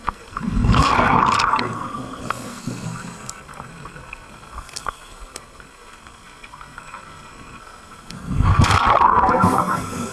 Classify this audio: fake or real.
fake